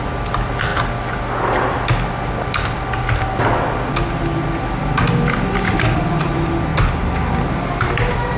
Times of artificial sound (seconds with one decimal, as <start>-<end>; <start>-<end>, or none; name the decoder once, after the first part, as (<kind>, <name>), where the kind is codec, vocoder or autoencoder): 0.0-0.7 (vocoder, BigVGAN v2); 5.1-6.7; 7.9-8.4